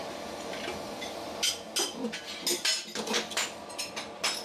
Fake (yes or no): no